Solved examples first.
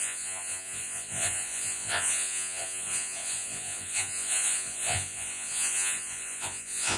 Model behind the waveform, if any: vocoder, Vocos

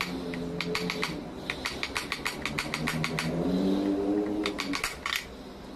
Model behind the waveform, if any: none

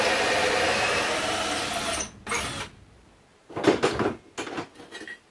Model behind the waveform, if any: none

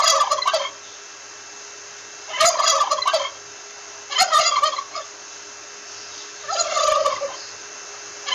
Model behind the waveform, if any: none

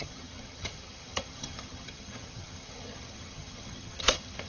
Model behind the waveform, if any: vocoder, HiFi-GAN